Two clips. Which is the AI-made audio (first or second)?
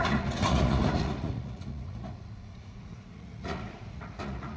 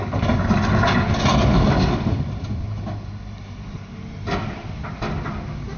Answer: first